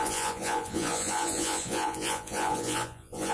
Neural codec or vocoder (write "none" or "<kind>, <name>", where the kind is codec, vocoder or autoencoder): vocoder, Vocos